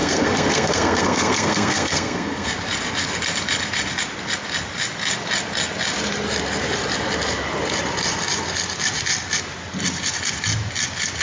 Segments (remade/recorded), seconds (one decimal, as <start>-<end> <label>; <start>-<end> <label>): 0.0-2.5 remade; 2.5-11.2 recorded